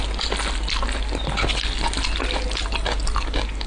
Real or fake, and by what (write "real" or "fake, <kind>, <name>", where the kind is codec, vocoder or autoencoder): real